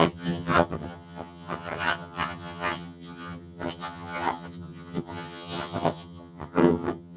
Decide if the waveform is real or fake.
fake